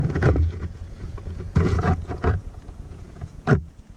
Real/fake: fake